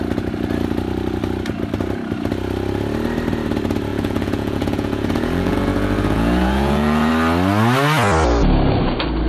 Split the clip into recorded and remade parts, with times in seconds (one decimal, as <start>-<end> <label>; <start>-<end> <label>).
0.0-3.9 recorded; 3.9-7.1 remade; 7.1-9.3 recorded